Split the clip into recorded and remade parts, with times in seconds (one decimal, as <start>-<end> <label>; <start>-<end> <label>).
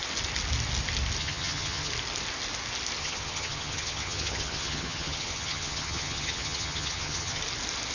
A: 0.0-1.2 recorded; 1.2-1.9 remade; 1.9-3.0 recorded; 3.0-7.4 remade; 7.4-7.9 recorded